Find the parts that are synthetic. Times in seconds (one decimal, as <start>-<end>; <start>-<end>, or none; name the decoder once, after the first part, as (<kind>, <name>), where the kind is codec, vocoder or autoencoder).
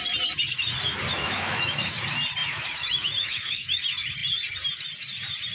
1.1-2.0 (autoencoder, DAC-VAE); 2.4-3.8